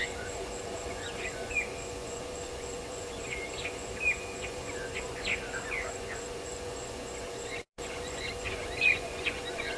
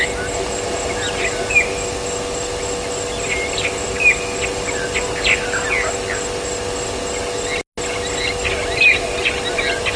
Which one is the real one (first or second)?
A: second